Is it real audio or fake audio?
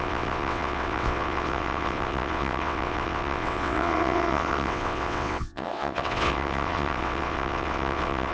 fake